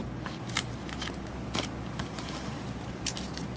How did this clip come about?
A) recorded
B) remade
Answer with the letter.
A